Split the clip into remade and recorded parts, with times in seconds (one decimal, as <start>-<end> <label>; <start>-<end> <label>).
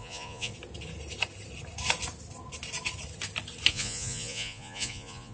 0.0-0.5 remade; 0.5-3.7 recorded; 3.7-5.3 remade